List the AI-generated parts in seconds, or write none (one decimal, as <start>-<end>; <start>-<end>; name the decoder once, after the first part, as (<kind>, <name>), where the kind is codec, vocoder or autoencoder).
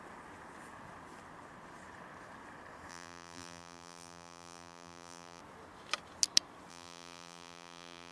2.9-5.4 (vocoder, BigVGAN v2); 6.7-8.1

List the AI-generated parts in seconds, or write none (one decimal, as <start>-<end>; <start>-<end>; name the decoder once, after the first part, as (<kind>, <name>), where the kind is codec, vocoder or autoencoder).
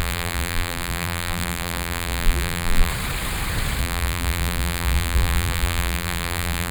0.0-2.9 (vocoder, BigVGAN v2); 3.8-6.7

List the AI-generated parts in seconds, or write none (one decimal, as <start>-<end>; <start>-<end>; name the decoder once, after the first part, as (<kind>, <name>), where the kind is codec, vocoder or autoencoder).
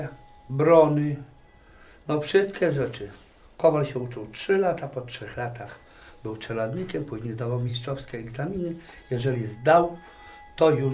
none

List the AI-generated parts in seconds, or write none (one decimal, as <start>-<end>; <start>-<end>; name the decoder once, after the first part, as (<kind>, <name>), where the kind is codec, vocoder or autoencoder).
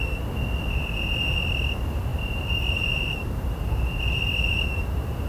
2.1-5.3 (vocoder, BigVGAN v2)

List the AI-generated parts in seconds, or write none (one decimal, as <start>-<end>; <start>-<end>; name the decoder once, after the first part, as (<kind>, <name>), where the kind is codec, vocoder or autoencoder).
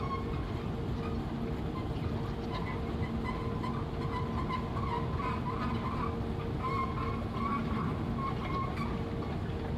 7.6-8.4 (vocoder, BigVGAN v2)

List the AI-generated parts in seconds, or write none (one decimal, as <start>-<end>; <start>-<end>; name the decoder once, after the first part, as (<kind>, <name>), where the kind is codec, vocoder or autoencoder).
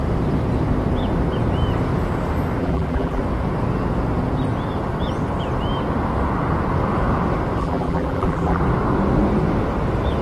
2.6-3.2 (vocoder, BigVGAN v2); 7.6-8.6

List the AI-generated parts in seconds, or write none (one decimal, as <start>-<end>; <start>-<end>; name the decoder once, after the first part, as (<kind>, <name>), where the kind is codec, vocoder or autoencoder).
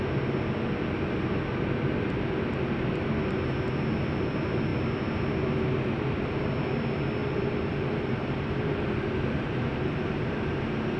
7.2-10.6 (vocoder, BigVGAN v2)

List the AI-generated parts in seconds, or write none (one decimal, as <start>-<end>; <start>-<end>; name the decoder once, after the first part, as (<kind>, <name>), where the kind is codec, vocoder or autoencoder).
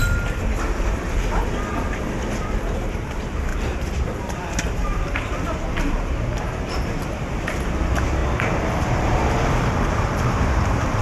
2.6-8.2 (vocoder, BigVGAN v2); 8.8-11.0